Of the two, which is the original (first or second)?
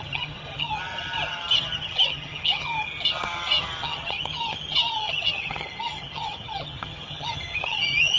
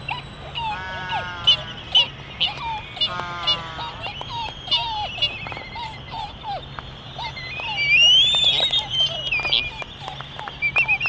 second